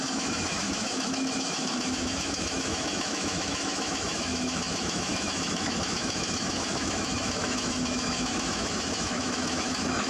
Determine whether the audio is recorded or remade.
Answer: remade